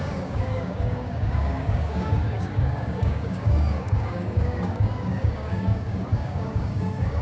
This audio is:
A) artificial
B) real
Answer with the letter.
A